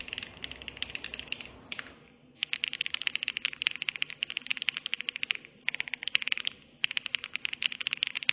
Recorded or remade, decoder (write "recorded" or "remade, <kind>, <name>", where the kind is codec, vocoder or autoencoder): recorded